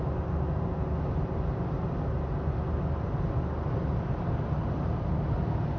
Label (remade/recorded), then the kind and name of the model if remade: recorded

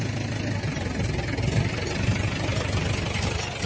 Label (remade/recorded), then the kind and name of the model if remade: recorded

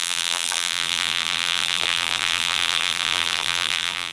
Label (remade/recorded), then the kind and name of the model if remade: remade, vocoder, BigVGAN v2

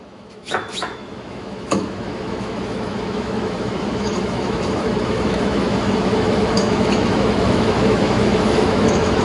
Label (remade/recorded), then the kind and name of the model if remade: remade, autoencoder, DAC-VAE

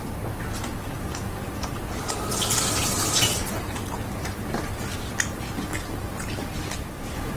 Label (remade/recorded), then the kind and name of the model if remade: recorded